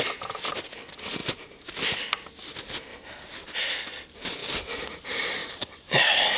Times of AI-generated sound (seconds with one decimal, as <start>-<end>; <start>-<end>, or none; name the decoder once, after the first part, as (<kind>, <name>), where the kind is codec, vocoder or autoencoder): 1.2-2.1 (vocoder, BigVGAN v2); 2.9-3.6; 5.4-6.4

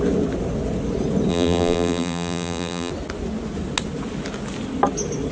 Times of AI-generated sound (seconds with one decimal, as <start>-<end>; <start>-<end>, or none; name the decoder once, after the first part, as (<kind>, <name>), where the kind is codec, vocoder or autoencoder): 1.3-2.9 (vocoder, BigVGAN v2)